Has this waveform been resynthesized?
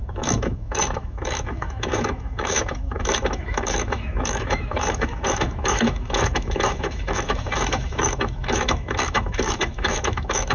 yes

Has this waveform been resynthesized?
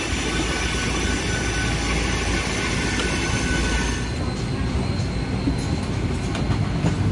no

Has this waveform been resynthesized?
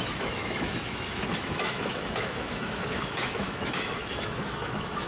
yes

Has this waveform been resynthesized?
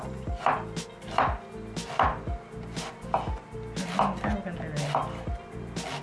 no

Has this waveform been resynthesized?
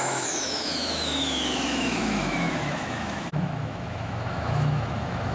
yes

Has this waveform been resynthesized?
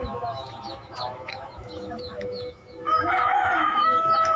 yes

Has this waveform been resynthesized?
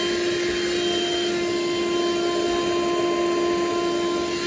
no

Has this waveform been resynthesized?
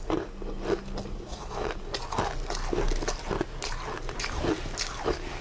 no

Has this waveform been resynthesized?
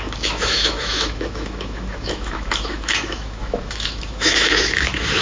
yes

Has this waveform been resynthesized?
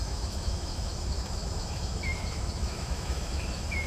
yes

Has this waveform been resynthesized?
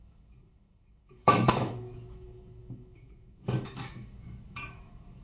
yes